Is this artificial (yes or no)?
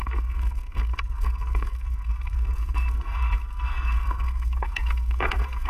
yes